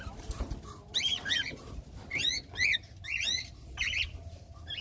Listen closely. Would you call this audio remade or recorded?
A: recorded